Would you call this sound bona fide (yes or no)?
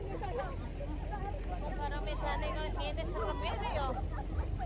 yes